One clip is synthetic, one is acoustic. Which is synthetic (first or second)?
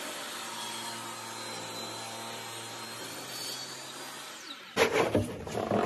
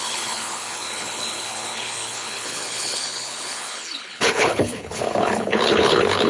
second